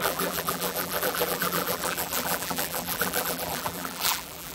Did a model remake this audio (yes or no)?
yes